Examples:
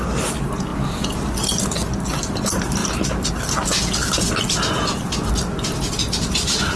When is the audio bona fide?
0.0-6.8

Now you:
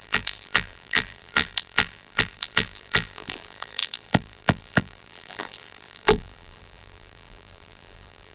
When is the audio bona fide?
none

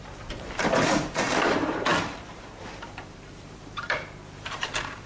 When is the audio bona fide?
none